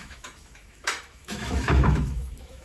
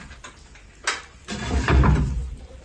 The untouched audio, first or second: second